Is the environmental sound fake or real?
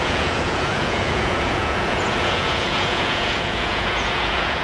fake